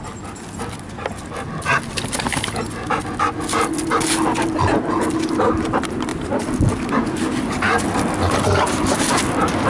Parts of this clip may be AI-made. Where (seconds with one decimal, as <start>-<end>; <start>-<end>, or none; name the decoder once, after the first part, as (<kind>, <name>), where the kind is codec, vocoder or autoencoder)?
none